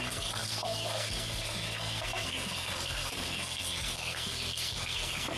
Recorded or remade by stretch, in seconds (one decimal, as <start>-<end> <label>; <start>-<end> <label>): 0.0-5.4 remade